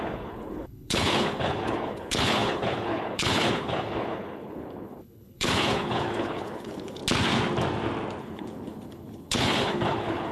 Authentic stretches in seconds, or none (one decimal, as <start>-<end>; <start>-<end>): 7.0-8.2

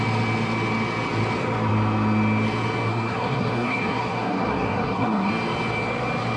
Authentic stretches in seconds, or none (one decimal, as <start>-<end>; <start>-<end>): 0.0-2.9; 5.3-6.4

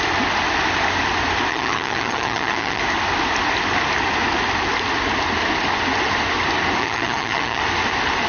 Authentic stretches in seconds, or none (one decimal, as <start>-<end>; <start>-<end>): 0.0-1.5; 2.8-6.8; 7.6-8.3

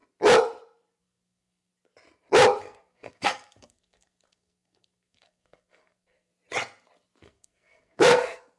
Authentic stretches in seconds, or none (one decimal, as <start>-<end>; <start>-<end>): 0.0-1.0; 1.7-2.6; 6.3-7.2

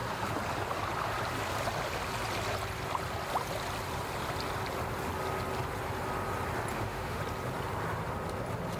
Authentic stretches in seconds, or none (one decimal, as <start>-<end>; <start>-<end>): 0.0-6.7; 7.2-8.8

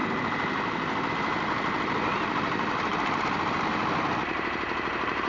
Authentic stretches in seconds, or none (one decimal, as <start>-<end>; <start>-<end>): 0.0-2.9

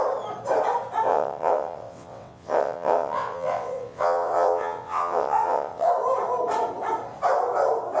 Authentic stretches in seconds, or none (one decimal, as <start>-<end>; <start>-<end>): 0.0-1.1; 5.9-8.0